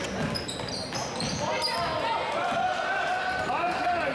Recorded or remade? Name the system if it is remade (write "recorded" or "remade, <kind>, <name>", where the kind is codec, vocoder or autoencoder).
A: recorded